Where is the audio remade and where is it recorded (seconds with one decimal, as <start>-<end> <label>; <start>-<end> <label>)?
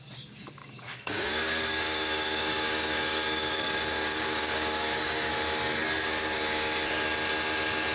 0.0-0.6 recorded; 0.6-5.3 remade; 5.3-7.9 recorded